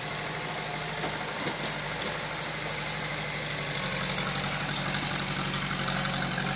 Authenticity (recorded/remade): recorded